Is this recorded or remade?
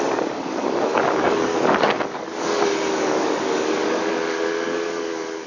remade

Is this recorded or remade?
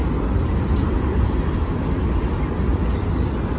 recorded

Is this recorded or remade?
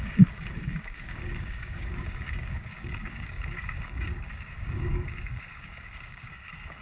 remade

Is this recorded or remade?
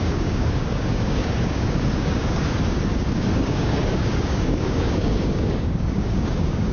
remade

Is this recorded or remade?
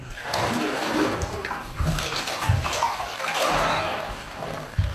remade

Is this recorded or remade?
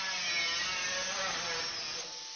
recorded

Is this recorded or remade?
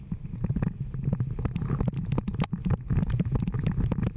recorded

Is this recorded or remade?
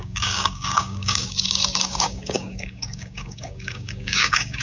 remade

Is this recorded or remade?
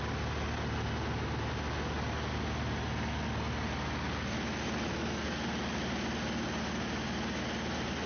recorded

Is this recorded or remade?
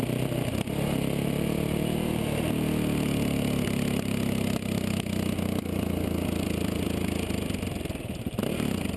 recorded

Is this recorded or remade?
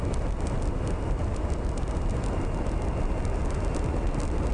recorded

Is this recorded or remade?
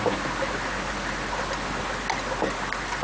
recorded